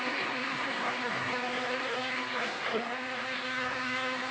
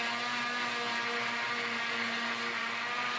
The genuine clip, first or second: second